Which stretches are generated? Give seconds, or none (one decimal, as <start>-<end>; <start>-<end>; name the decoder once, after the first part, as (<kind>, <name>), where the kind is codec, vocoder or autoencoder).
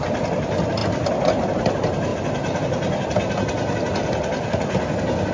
none